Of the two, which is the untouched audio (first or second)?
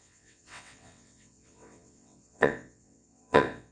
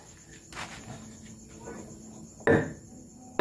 second